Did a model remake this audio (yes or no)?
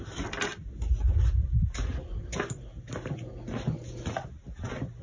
no